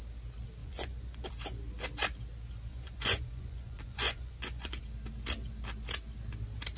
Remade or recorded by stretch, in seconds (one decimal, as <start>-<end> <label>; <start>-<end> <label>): 0.0-0.6 recorded; 0.6-1.3 remade; 1.3-2.7 recorded; 2.7-4.8 remade; 4.8-6.8 recorded